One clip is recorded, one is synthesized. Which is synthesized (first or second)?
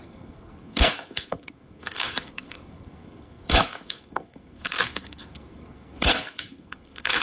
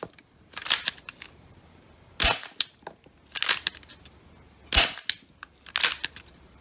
first